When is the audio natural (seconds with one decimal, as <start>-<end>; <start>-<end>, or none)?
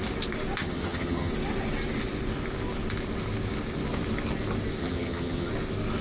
0.0-0.6; 1.3-4.8; 5.5-6.0